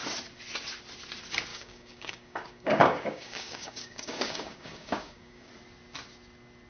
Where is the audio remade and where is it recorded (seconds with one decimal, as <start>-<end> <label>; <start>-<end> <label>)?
0.0-1.5 recorded; 1.5-5.5 remade; 5.5-6.7 recorded